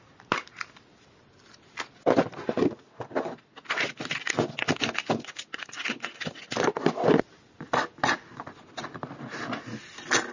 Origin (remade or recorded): recorded